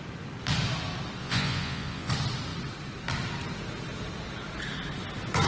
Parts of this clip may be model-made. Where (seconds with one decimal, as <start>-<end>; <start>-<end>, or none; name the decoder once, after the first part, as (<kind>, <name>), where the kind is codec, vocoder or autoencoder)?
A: 1.2-2.1 (vocoder, Vocos)

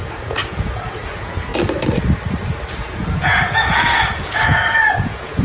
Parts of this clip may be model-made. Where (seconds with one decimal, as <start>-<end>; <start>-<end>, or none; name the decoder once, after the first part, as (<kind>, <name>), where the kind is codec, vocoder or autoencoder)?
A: 0.0-1.5 (vocoder, Vocos); 2.7-5.4

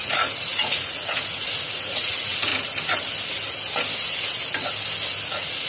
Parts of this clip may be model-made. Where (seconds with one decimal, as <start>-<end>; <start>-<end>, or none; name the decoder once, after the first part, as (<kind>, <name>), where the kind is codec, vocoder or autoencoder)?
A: 0.0-2.5 (vocoder, Vocos); 5.3-5.7

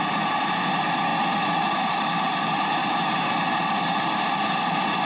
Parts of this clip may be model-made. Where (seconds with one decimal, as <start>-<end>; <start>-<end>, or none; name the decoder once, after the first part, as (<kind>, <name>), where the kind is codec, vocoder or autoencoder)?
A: none

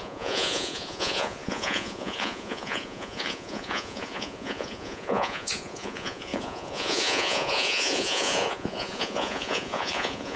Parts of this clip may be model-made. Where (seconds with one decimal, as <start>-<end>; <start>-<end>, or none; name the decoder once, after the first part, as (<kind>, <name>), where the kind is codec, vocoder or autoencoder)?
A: 0.0-10.4 (vocoder, Vocos)

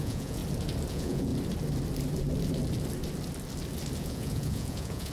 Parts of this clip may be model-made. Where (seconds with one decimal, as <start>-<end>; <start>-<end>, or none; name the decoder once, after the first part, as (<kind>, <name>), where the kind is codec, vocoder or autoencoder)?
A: 0.0-0.4 (vocoder, Vocos); 0.9-1.3; 4.0-5.1

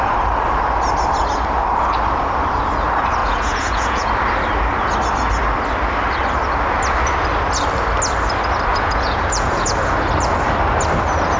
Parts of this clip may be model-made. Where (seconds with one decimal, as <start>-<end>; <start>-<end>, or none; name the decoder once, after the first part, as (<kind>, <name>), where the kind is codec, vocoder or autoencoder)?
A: 3.2-4.1 (vocoder, Vocos); 8.7-9.9